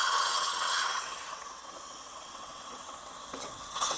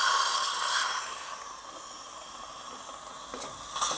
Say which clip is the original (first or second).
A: second